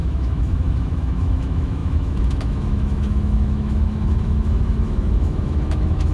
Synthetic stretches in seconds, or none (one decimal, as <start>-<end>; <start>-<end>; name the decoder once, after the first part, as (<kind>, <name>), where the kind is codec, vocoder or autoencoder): 0.0-6.1 (autoencoder, DAC-VAE)